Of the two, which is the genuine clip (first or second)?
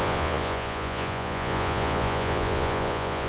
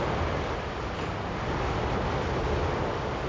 second